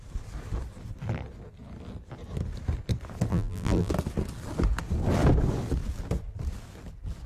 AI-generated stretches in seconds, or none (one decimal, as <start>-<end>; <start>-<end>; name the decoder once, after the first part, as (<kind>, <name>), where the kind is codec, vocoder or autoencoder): 3.3-3.9 (vocoder, BigVGAN v2)